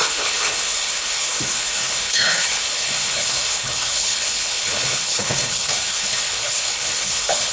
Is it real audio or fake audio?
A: fake